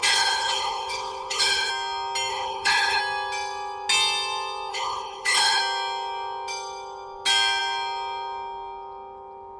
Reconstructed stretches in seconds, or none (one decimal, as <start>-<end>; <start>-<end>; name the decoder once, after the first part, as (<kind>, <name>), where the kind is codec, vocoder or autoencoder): 0.0-1.7 (codec, HILCodec); 2.3-3.0; 4.7-5.6